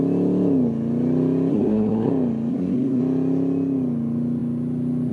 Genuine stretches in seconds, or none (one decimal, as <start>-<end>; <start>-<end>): 0.0-1.5; 2.1-2.5; 3.0-5.1